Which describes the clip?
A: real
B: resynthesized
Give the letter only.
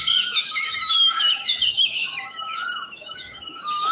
B